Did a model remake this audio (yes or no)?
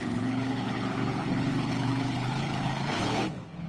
yes